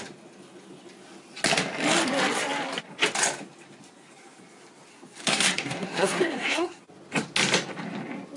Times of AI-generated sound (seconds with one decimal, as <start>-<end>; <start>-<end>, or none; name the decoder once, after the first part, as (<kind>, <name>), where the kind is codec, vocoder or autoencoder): 4.9-6.8 (codec, SNAC)